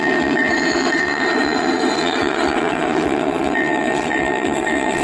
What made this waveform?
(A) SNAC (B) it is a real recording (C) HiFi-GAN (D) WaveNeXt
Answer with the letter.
D